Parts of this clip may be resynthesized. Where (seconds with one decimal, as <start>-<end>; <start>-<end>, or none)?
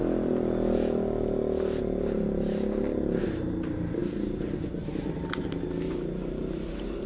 none